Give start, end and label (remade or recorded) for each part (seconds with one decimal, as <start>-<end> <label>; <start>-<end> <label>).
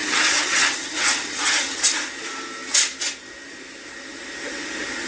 0.0-1.8 remade; 1.8-5.1 recorded